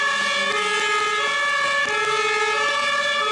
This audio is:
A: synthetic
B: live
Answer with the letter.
B